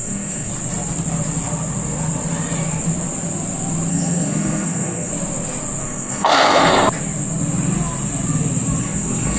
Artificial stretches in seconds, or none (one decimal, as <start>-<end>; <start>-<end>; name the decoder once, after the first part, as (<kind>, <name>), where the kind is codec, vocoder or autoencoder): 0.0-0.5 (codec, SNAC); 3.9-5.1; 5.8-6.7; 8.8-9.4